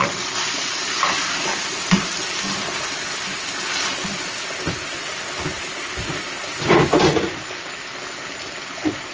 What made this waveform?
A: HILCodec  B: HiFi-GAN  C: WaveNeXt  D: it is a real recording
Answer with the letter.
D